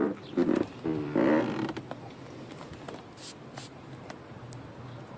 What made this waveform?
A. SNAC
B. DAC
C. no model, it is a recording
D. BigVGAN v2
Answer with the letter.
C